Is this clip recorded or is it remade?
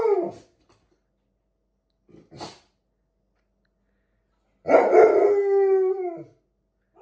recorded